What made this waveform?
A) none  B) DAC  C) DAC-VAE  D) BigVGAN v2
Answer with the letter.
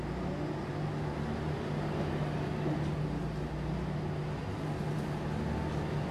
A